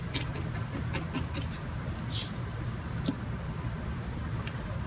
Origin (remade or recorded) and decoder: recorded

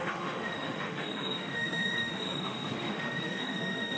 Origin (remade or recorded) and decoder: remade, autoencoder, DAC-VAE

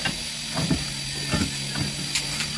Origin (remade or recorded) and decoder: recorded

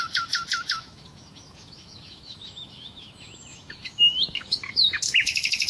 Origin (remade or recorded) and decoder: remade, autoencoder, DAC-VAE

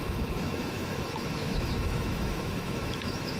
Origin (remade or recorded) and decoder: remade, autoencoder, DAC-VAE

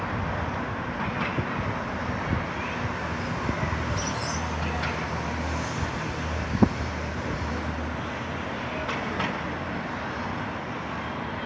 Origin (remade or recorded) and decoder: recorded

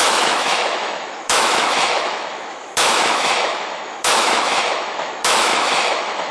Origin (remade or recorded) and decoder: remade, autoencoder, DAC-VAE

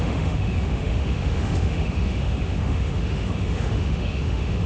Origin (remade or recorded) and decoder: remade, autoencoder, DAC-VAE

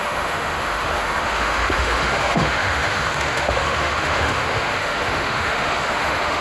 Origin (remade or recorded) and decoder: remade, autoencoder, DAC-VAE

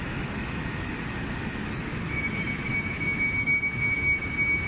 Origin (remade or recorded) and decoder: remade, autoencoder, DAC-VAE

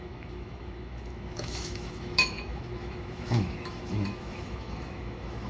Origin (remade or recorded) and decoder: remade, autoencoder, DAC-VAE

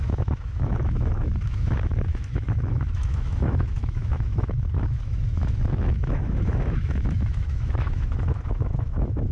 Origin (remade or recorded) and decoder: remade, autoencoder, DAC-VAE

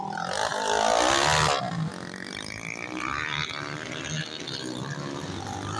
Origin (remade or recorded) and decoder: recorded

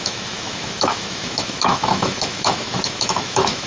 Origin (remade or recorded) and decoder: remade, autoencoder, DAC-VAE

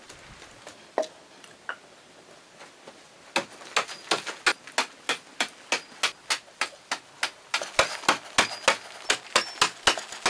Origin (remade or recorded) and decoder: recorded